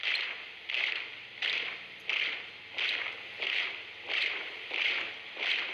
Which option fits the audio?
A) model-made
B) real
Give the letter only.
A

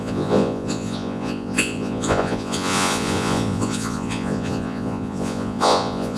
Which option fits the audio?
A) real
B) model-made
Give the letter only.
B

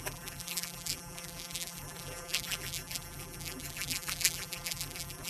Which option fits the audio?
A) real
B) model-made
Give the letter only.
B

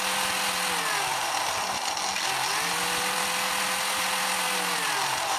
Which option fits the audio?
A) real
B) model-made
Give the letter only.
A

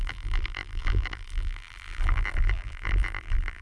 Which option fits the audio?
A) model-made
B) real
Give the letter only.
A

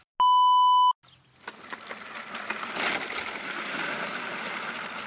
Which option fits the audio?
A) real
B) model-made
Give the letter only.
A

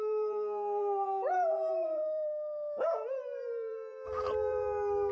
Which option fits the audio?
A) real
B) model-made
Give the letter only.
B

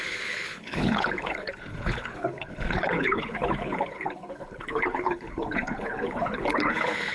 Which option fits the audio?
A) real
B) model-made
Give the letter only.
B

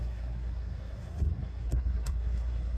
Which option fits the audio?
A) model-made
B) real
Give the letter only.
A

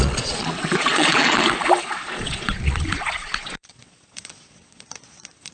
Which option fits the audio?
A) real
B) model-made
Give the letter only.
B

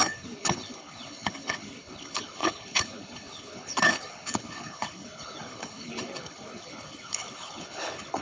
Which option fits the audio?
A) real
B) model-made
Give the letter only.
B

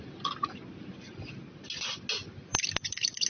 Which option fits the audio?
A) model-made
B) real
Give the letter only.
B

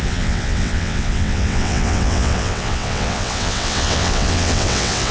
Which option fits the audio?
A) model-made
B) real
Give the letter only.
A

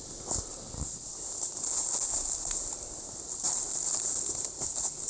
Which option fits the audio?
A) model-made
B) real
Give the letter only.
B